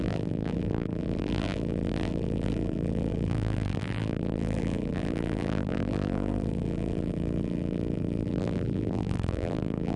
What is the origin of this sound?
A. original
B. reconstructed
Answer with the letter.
B